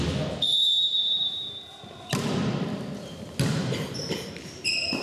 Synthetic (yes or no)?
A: no